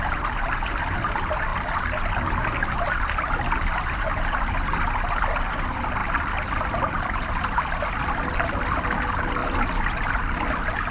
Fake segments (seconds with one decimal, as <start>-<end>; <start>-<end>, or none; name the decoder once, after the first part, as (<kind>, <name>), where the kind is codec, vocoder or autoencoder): 9.4-10.1 (vocoder, BigVGAN v2)